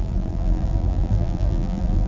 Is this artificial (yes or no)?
yes